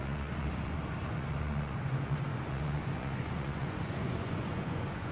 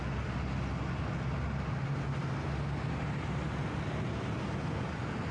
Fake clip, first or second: first